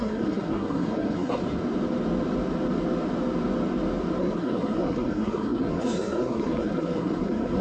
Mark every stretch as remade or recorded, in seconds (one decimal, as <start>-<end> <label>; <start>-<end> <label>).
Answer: 0.0-1.4 remade; 1.4-4.2 recorded; 4.2-7.6 remade

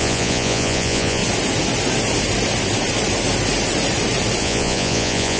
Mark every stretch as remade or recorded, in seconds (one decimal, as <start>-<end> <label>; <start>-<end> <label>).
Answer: 0.0-1.2 remade; 1.2-4.4 recorded; 4.4-5.4 remade

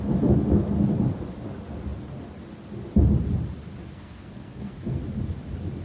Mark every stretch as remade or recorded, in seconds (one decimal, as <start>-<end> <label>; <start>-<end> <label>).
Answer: 0.0-3.8 recorded; 3.8-5.0 remade; 5.0-5.8 recorded